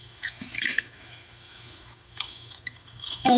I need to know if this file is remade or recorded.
remade